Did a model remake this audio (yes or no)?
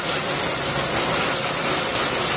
no